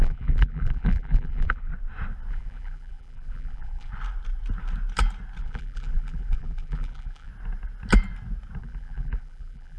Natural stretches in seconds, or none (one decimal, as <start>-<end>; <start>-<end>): 1.7-2.3; 3.9-5.4; 7.3-8.6

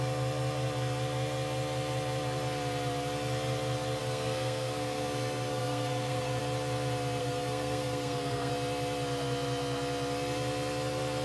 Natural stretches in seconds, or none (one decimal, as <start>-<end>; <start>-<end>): 0.0-4.0; 6.4-7.2; 8.5-11.2

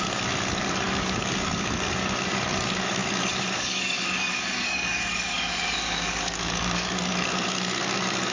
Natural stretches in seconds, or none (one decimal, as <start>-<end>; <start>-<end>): none